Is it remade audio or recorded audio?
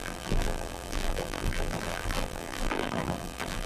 remade